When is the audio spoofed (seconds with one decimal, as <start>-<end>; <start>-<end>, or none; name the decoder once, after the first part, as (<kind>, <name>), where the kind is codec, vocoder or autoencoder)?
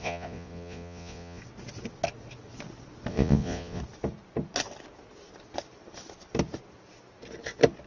0.0-1.4 (vocoder, Vocos); 3.1-3.8